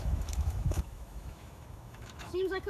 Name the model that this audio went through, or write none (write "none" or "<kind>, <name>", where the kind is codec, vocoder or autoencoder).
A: autoencoder, DAC-VAE